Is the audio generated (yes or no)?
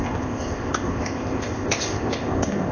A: yes